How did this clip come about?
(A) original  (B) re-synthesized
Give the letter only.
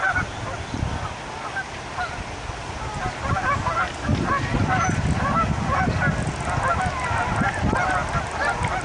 A